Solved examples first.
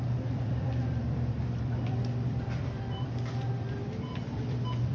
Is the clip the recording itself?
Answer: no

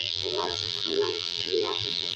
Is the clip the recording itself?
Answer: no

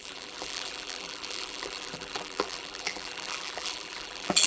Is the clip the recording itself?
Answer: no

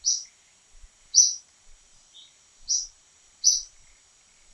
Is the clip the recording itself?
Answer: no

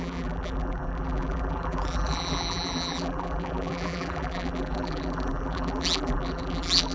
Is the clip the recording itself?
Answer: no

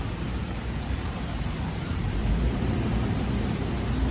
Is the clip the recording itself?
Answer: no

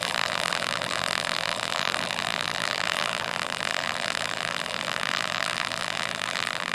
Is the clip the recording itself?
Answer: no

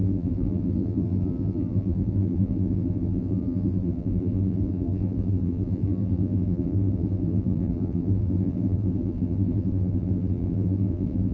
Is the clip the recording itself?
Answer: no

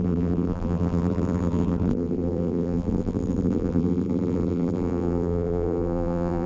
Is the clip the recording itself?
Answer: no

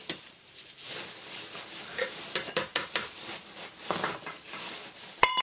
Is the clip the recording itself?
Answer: no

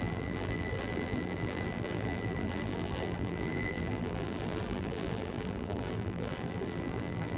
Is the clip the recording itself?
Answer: no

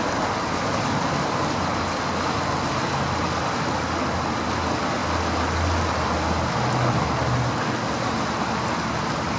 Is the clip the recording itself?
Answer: yes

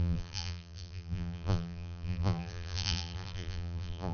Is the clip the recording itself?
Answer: no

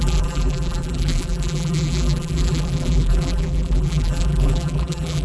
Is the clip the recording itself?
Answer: no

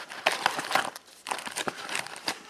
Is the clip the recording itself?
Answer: no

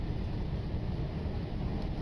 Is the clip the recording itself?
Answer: yes